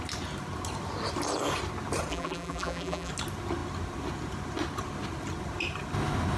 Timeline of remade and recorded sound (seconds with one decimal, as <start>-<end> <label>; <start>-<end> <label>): 0.0-2.1 recorded; 2.1-3.1 remade; 3.1-6.4 recorded